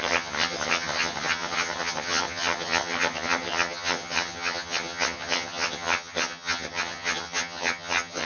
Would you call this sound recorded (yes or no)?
no